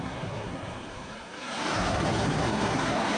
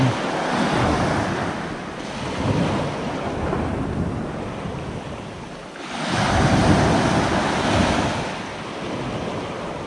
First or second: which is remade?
first